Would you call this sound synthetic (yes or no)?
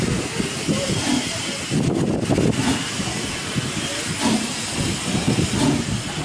no